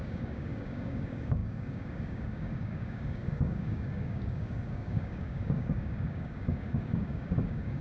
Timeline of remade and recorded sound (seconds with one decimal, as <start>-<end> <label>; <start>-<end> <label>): 0.0-7.8 remade